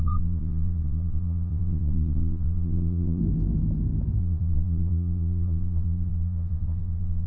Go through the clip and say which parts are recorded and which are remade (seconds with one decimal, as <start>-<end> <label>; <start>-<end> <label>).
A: 0.0-3.2 remade; 3.2-4.2 recorded; 4.2-7.3 remade